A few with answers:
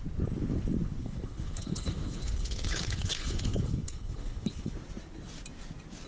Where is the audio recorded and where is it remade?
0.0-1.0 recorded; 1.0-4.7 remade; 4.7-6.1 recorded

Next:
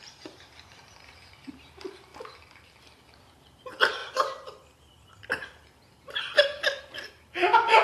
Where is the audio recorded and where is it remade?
0.0-2.1 remade; 2.1-2.6 recorded; 2.6-7.8 remade

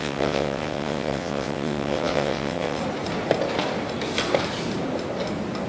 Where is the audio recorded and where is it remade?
0.0-2.8 remade; 2.8-5.7 recorded

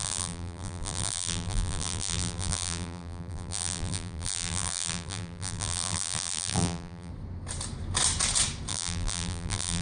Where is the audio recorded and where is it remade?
0.0-7.1 remade; 7.1-8.7 recorded; 8.7-9.8 remade

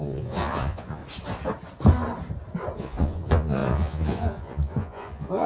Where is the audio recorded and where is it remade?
0.0-1.0 remade; 1.0-2.8 recorded; 2.8-5.5 remade